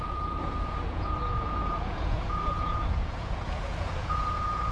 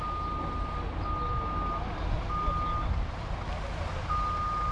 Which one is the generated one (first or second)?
first